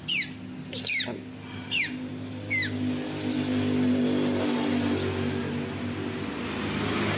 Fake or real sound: real